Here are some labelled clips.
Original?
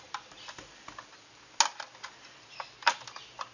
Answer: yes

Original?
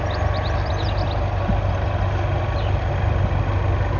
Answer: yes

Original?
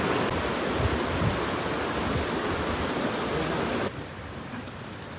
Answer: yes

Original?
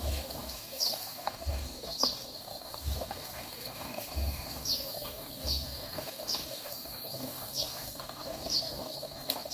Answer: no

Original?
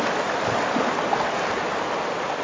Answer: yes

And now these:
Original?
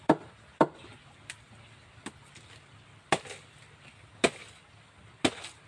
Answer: yes